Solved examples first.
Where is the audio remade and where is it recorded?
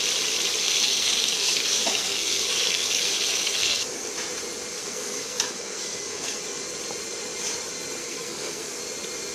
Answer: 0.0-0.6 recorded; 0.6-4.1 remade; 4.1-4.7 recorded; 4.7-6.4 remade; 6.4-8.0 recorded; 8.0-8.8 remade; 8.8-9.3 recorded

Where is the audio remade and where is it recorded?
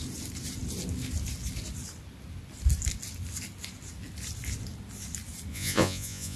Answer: 0.0-5.5 recorded; 5.5-6.4 remade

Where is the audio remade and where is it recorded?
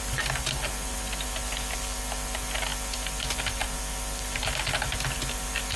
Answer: 0.0-5.8 recorded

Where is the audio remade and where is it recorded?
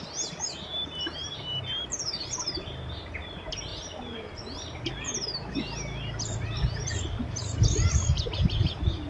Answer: 0.0-9.1 remade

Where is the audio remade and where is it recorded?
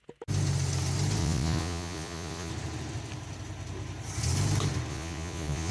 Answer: 0.0-1.2 recorded; 1.2-2.5 remade; 2.5-4.9 recorded; 4.9-5.7 remade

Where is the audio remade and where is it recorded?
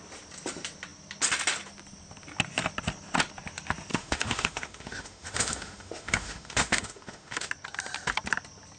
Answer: 0.0-3.9 recorded; 3.9-7.5 remade; 7.5-8.8 recorded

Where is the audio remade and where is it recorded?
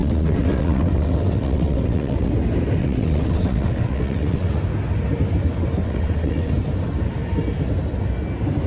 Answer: 0.0-2.3 remade; 2.3-2.8 recorded; 2.8-4.6 remade; 4.6-5.8 recorded; 5.8-6.5 remade; 6.5-8.7 recorded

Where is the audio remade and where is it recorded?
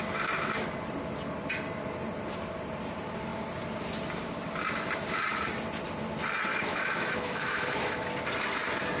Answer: 0.0-6.5 recorded; 6.5-8.1 remade; 8.1-9.0 recorded